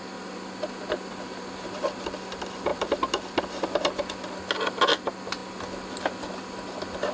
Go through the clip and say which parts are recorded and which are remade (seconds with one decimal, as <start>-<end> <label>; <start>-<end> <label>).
0.0-2.7 recorded; 2.7-3.4 remade; 3.4-7.1 recorded